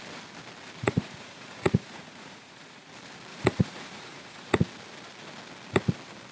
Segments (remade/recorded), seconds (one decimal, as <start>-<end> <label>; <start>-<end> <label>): 0.0-0.8 recorded; 0.8-2.9 remade; 2.9-3.3 recorded; 3.3-4.6 remade; 4.6-6.3 recorded